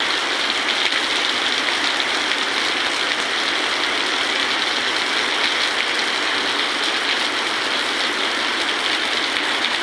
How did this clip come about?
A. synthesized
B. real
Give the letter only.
B